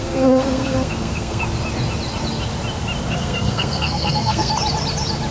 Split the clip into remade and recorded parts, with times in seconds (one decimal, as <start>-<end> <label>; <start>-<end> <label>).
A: 0.0-1.4 remade; 1.4-3.1 recorded; 3.1-4.5 remade; 4.5-5.3 recorded